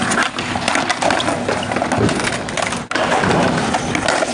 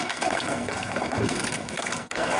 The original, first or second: first